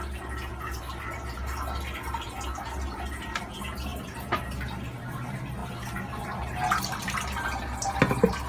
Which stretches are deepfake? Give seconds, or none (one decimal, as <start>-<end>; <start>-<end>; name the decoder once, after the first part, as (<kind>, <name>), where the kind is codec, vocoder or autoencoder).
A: 3.9-4.4 (vocoder, BigVGAN v2); 5.6-6.8